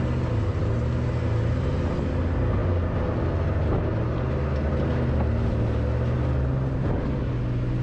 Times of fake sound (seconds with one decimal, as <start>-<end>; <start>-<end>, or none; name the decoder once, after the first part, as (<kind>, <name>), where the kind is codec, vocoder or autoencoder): none